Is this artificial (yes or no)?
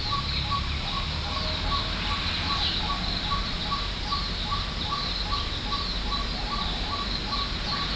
no